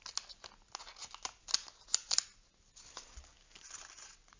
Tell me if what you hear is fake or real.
real